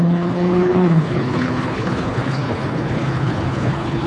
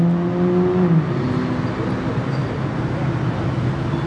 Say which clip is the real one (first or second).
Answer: second